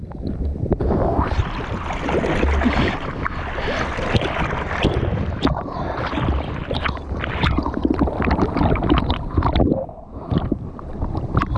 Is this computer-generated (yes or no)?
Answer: yes